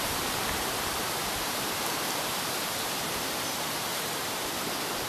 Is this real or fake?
fake